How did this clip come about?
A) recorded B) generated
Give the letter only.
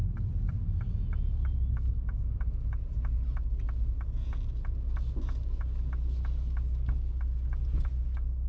A